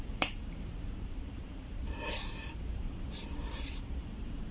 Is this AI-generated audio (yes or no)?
yes